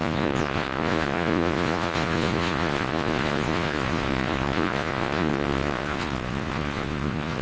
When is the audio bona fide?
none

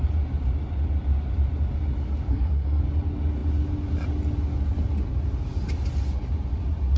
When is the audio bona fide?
0.0-2.3; 2.8-7.0